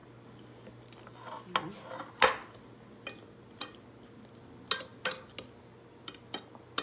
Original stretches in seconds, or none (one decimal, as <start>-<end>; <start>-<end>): 0.0-6.8